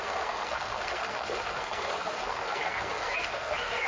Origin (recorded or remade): remade